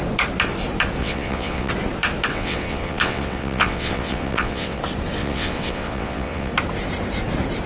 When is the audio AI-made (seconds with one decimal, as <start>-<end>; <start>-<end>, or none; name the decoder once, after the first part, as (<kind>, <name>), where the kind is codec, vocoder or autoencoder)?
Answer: 1.0-1.7 (vocoder, WaveNeXt); 2.3-4.8; 5.2-6.5